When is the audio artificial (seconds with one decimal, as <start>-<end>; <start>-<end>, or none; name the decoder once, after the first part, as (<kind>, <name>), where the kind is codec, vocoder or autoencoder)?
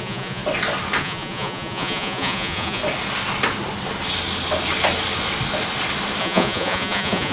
0.0-0.4 (vocoder, Vocos); 1.0-2.8; 6.2-7.3